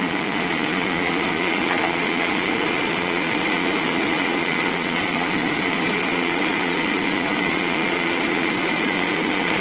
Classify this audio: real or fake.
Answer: fake